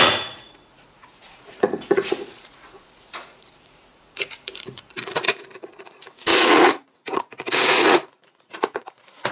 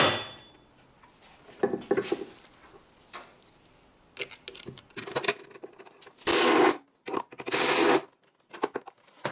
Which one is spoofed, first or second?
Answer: first